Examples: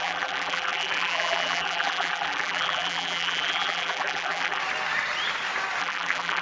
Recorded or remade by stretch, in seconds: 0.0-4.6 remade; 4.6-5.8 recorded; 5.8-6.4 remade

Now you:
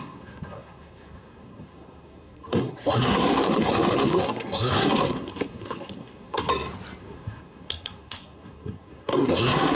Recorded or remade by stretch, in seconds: 0.0-6.5 remade; 6.5-7.0 recorded; 7.0-9.7 remade

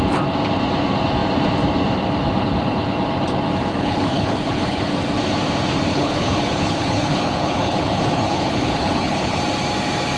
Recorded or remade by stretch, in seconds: 0.0-3.7 recorded; 3.7-4.9 remade; 4.9-5.9 recorded; 5.9-9.4 remade; 9.4-10.2 recorded